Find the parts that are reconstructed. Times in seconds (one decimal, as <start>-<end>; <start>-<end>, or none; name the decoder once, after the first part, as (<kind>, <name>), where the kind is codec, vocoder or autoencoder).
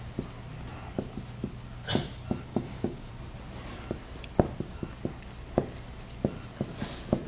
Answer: 2.5-3.1 (codec, DAC)